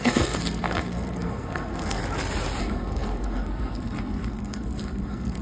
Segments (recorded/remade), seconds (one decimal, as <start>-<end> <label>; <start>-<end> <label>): 0.0-2.0 remade; 2.0-2.6 recorded; 2.6-5.4 remade